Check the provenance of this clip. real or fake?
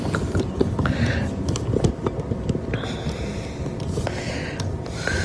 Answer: real